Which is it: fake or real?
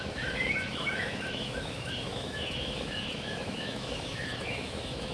fake